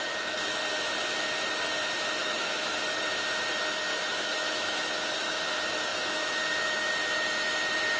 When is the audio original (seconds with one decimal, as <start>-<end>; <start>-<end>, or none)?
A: 0.0-2.2; 2.8-3.9; 5.4-5.9; 6.9-8.0